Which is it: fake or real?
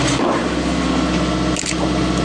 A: real